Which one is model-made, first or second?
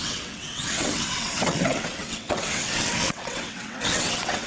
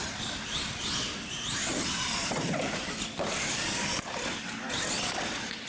first